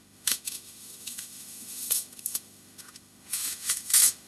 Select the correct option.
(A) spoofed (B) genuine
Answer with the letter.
A